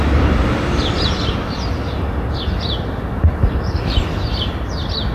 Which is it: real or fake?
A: real